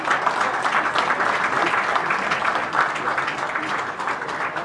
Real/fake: real